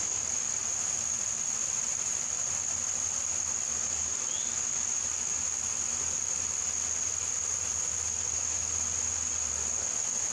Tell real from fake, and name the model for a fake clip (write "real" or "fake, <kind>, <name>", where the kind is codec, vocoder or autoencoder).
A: real